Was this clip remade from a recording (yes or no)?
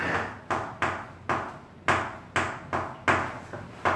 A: no